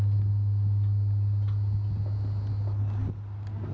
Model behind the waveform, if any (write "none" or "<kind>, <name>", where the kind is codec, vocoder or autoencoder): none